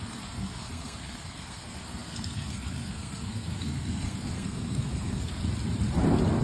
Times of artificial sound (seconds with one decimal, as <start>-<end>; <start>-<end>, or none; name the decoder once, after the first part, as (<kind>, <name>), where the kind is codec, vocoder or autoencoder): 0.0-5.4 (codec, SNAC)